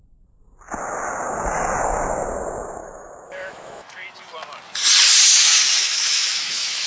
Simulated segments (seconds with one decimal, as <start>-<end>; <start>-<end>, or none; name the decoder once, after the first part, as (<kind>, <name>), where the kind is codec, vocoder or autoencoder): 2.8-4.1 (autoencoder, DAC-VAE); 5.8-6.9